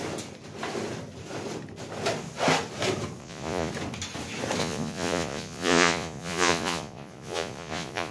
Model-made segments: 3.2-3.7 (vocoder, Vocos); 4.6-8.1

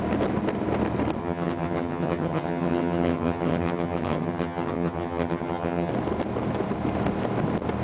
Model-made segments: 1.2-5.9 (vocoder, HiFi-GAN)